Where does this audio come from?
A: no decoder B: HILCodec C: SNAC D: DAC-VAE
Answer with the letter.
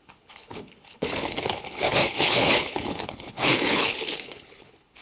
B